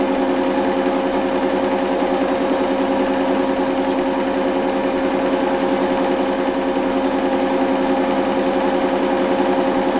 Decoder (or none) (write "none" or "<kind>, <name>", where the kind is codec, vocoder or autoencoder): none